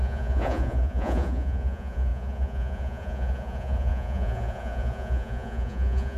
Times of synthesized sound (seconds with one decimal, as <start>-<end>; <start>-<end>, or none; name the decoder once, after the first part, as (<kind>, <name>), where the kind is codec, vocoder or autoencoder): 0.0-6.2 (vocoder, Vocos)